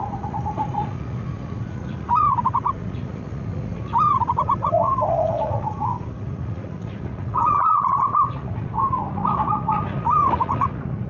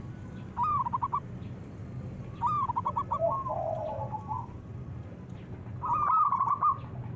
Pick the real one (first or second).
second